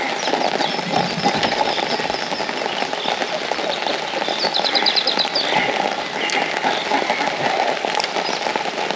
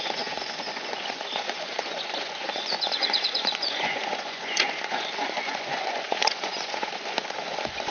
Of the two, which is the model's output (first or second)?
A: second